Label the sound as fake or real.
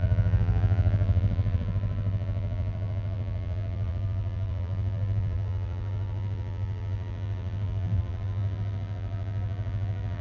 fake